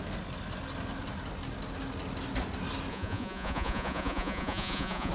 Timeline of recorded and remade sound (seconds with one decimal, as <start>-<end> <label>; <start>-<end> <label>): 0.0-2.9 recorded; 2.9-5.1 remade